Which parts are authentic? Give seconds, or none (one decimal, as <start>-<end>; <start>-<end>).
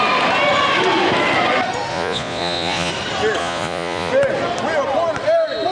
0.0-1.9; 2.9-3.4; 4.1-5.7